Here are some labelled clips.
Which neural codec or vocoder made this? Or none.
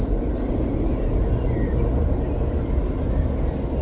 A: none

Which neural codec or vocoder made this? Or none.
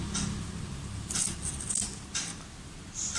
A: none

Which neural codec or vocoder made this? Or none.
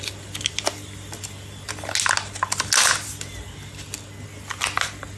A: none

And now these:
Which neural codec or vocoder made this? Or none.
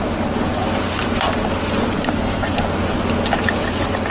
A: none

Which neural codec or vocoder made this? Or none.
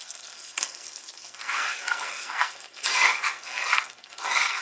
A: codec, SNAC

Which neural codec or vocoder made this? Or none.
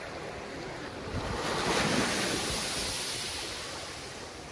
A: none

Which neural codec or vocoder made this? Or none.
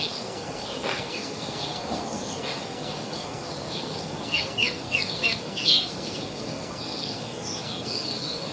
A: codec, SNAC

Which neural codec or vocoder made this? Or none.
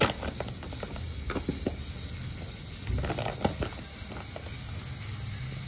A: none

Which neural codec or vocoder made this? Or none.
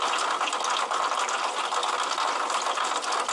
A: none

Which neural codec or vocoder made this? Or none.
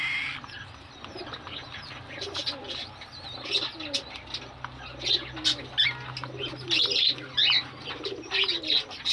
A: none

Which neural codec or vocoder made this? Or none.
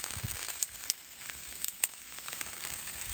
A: codec, SNAC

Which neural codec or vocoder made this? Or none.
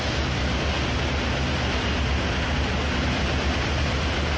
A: none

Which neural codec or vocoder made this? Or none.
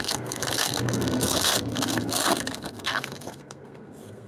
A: codec, SNAC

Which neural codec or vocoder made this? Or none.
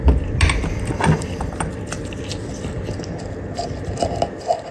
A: none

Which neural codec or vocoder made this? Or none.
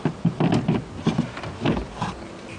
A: none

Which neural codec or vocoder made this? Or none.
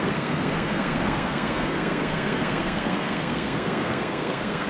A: codec, SNAC